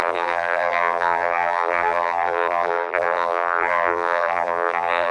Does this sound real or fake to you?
fake